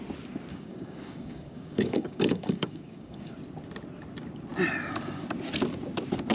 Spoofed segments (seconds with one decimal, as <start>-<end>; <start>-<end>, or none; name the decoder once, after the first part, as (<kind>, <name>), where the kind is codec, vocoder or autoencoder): 0.5-3.3 (codec, DAC)